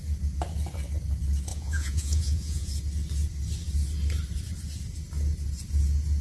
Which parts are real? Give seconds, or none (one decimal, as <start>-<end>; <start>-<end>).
0.0-1.5; 2.7-6.2